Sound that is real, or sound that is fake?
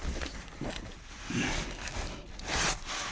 real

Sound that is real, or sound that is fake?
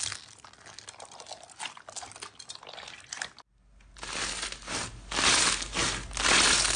real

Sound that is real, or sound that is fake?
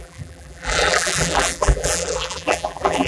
fake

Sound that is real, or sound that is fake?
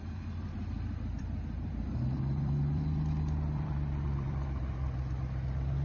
fake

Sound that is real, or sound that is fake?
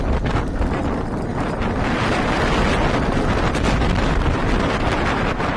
real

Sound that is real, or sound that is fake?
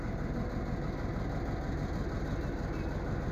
real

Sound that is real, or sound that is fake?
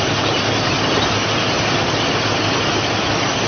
real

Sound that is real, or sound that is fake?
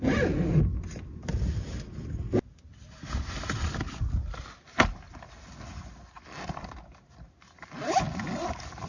real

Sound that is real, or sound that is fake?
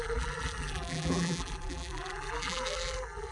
fake